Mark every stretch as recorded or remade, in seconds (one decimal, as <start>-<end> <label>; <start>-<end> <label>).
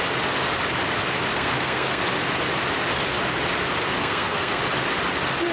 0.0-1.3 recorded; 1.3-2.0 remade; 2.0-4.0 recorded; 4.0-4.6 remade; 4.6-5.5 recorded